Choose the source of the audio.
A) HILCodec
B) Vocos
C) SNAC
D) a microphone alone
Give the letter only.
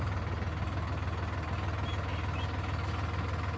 D